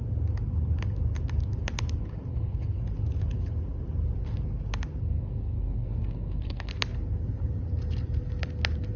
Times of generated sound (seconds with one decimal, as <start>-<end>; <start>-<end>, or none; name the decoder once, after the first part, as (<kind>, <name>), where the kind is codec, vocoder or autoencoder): 2.3-2.8 (codec, SNAC); 5.0-6.7